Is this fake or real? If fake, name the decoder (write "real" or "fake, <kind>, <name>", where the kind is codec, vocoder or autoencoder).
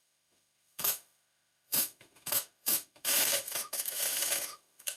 fake, autoencoder, DAC-VAE